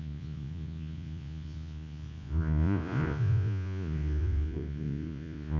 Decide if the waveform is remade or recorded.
remade